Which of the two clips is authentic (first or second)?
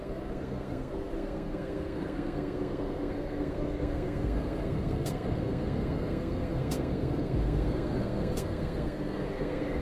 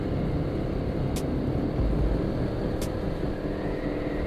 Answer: second